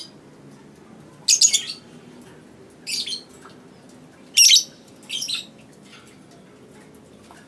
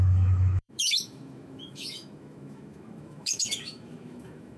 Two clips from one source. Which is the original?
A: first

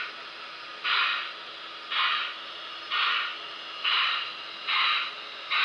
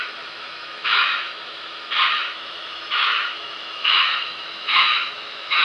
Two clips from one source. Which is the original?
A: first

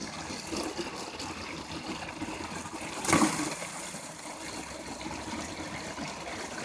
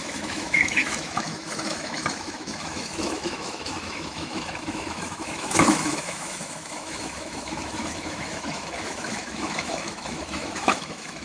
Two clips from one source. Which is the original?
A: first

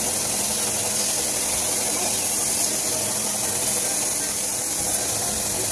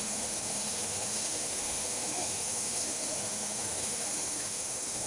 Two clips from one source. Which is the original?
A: first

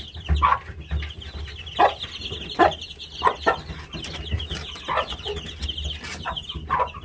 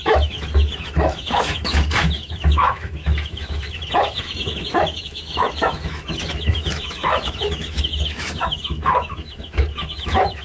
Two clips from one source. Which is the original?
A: first